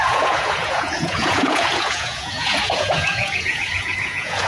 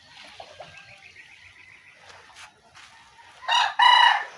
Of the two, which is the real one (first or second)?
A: second